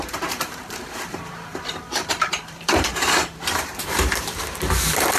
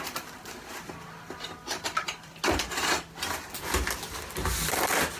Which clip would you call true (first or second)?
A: second